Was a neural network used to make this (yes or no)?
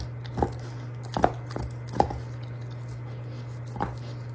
no